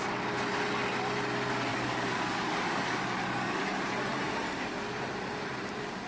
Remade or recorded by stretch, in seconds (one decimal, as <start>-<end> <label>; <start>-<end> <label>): 0.0-1.7 recorded; 1.7-3.6 remade; 3.6-6.1 recorded

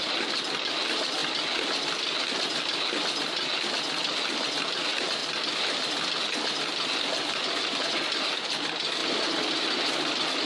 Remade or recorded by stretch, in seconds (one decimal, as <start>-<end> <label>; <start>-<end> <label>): 0.0-10.5 recorded

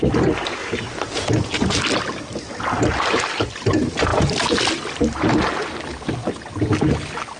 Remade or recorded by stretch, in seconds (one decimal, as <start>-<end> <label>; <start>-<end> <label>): 0.0-7.4 recorded

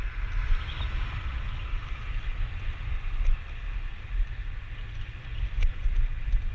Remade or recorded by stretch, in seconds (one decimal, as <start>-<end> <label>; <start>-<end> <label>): 0.0-6.5 recorded

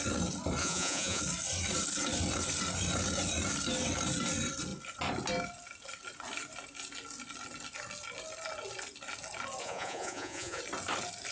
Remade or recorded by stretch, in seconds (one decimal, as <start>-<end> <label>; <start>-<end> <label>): 0.0-0.6 recorded; 0.6-1.2 remade; 1.2-9.6 recorded; 9.6-10.6 remade; 10.6-11.3 recorded